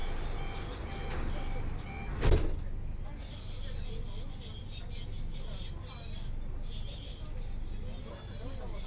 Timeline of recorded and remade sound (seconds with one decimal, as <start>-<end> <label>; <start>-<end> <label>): 0.0-8.9 recorded